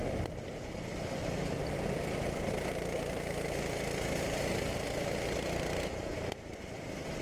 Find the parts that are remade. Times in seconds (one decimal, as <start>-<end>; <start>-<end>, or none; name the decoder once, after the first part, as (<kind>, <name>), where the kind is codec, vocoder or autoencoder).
none